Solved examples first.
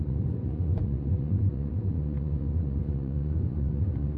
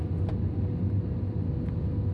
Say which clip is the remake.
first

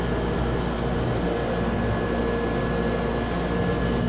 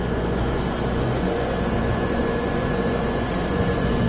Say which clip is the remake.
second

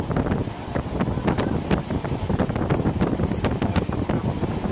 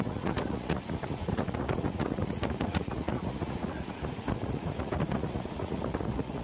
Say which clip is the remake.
second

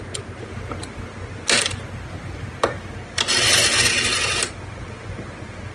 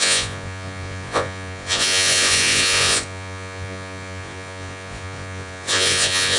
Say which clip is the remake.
second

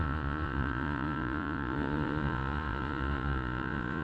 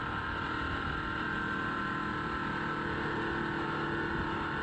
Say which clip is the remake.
first